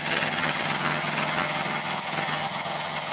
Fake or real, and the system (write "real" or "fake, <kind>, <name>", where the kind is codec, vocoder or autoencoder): fake, vocoder, HiFi-GAN